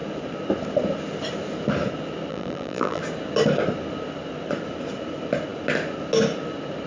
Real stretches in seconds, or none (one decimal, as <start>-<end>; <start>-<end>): 0.0-2.3; 3.0-6.9